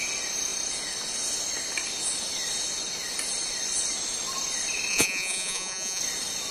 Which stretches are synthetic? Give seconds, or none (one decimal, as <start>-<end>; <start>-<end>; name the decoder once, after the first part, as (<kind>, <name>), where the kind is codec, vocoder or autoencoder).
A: 4.9-6.0 (vocoder, Vocos)

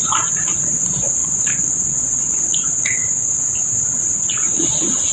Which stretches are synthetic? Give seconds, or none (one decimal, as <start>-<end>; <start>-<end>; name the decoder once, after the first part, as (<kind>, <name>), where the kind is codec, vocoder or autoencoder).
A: 0.5-3.0 (vocoder, Vocos); 3.9-5.1

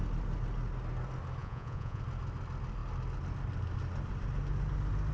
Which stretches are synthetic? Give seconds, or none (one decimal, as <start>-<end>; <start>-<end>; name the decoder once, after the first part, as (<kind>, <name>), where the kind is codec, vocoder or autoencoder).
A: 1.4-2.0 (vocoder, Vocos)